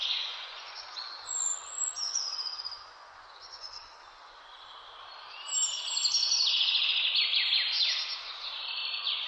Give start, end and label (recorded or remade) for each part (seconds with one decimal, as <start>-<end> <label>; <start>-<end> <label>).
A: 0.0-4.5 remade; 4.5-8.9 recorded; 8.9-9.3 remade